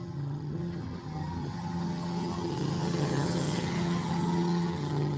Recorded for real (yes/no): no